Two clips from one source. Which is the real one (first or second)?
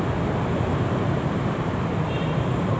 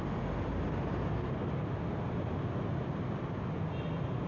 second